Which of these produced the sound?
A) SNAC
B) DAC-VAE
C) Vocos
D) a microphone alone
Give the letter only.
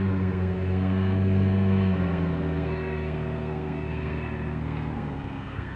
A